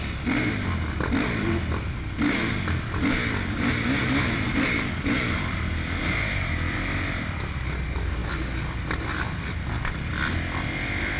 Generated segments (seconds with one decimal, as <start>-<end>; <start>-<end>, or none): none